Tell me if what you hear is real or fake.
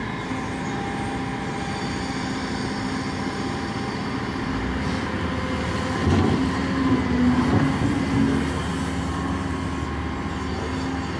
real